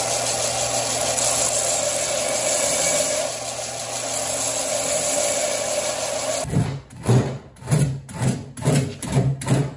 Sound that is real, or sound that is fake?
real